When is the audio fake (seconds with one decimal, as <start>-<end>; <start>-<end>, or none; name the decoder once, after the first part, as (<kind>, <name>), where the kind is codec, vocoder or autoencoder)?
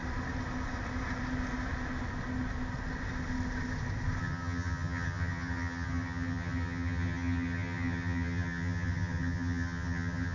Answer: 4.2-10.3 (vocoder, HiFi-GAN)